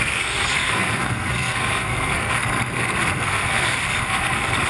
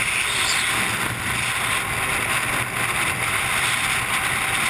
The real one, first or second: second